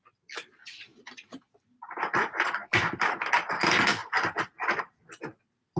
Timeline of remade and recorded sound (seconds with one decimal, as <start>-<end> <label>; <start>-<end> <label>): 0.0-0.9 recorded; 0.9-3.3 remade; 3.3-4.0 recorded; 4.0-4.8 remade; 4.8-5.8 recorded